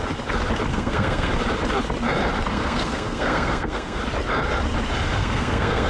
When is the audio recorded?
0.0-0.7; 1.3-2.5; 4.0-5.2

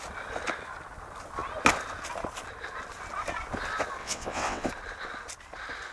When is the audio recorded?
0.0-4.0; 4.7-5.9